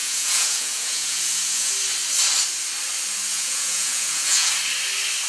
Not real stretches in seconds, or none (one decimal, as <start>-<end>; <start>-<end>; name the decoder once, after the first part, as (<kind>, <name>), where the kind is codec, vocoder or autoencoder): 0.0-1.7 (vocoder, Vocos); 3.3-4.5